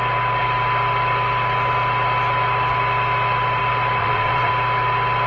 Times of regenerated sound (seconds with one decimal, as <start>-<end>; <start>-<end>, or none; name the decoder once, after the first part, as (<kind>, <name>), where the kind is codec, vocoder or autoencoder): 4.0-4.5 (vocoder, WaveNeXt)

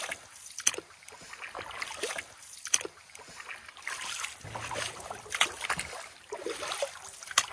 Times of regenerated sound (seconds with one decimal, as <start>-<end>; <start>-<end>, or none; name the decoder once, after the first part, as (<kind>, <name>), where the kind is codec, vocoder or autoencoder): none

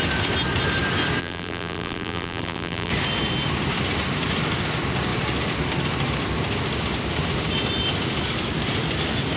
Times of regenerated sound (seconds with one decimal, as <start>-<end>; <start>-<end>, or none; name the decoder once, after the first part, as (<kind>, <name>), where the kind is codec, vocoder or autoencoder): 1.2-2.9 (vocoder, BigVGAN v2)